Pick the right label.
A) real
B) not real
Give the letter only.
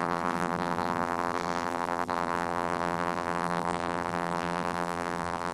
B